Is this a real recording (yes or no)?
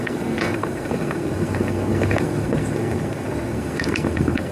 no